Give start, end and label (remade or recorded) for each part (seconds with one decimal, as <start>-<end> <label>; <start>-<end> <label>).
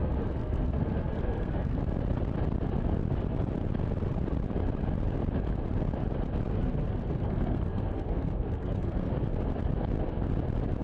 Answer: 0.0-1.8 remade; 1.8-6.5 recorded; 6.5-9.1 remade; 9.1-10.8 recorded